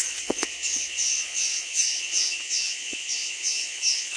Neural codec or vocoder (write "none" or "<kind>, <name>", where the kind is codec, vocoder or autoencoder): vocoder, Vocos